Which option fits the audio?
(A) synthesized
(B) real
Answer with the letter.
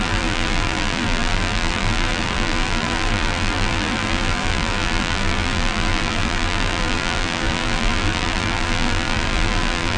A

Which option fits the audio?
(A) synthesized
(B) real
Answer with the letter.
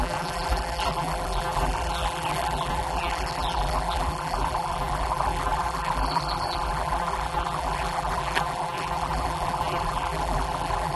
A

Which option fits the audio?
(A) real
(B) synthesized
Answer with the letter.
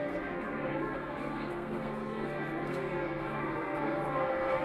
B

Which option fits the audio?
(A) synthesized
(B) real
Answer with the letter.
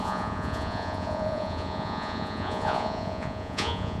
A